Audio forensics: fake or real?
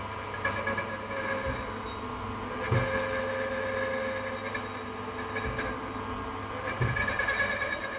real